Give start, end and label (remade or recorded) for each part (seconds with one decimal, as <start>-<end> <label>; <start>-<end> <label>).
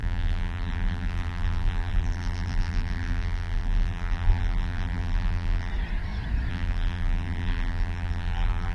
0.0-5.7 remade; 5.7-6.5 recorded; 6.5-8.7 remade